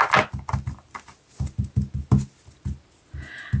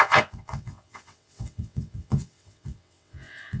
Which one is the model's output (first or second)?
second